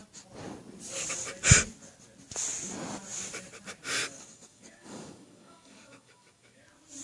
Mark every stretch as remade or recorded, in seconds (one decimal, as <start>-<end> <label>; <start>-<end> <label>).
0.0-4.0 recorded; 4.0-6.6 remade; 6.6-7.0 recorded